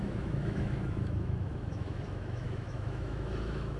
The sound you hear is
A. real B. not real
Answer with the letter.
B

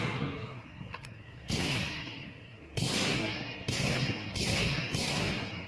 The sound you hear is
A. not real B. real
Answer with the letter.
A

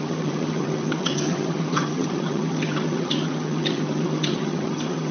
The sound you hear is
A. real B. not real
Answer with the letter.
B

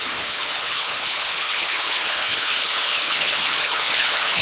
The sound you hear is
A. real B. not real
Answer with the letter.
B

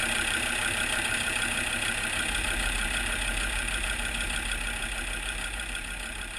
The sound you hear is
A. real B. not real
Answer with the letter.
B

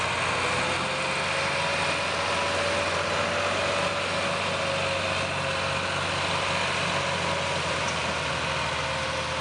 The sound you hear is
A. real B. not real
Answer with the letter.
A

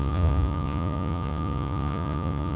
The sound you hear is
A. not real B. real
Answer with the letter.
A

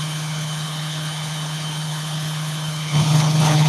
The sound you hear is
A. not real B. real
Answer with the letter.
A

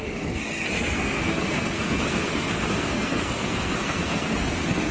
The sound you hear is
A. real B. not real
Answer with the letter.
B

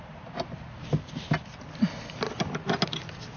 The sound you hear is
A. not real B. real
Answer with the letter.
B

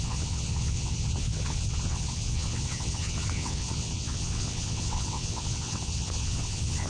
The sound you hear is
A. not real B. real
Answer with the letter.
A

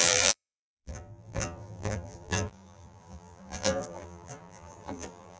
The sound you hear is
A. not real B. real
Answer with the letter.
A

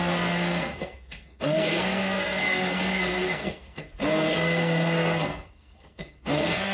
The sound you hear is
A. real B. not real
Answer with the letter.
B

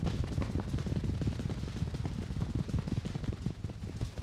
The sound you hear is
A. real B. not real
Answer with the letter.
A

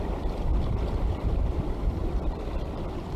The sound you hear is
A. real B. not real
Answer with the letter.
B